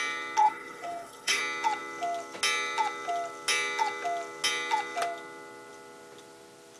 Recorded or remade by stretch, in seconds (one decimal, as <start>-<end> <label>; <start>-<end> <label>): 0.0-0.4 recorded; 0.4-1.4 remade; 1.4-6.8 recorded